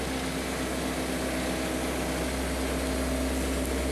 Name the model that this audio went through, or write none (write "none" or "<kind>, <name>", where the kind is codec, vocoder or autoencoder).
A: none